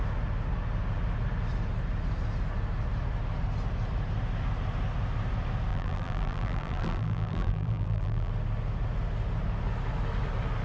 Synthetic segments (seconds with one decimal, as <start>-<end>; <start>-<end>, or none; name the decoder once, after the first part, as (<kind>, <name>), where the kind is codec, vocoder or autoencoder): 5.7-8.3 (vocoder, BigVGAN v2)